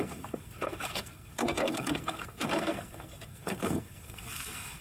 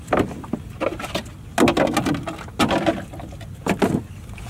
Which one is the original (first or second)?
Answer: second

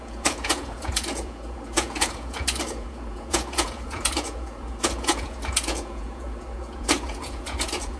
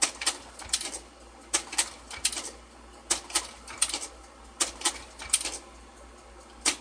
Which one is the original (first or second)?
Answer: second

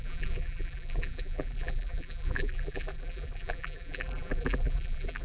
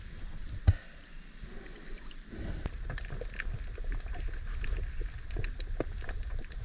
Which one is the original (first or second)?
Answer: second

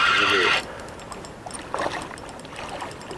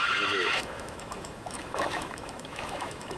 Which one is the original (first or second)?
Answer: first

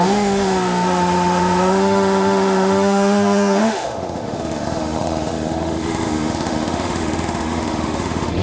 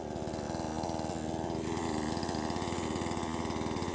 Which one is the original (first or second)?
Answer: second